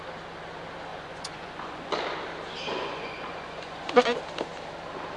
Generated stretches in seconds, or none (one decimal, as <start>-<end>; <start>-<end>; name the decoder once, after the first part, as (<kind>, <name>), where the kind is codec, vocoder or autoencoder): 0.9-2.0 (vocoder, Vocos); 2.8-4.0